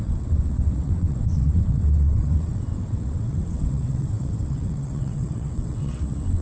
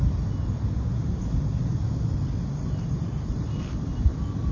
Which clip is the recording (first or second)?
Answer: second